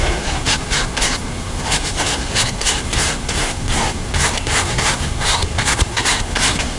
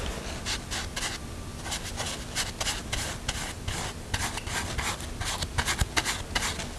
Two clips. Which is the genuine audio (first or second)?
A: second